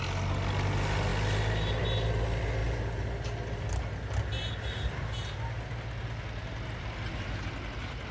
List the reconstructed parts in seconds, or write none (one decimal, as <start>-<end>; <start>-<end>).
none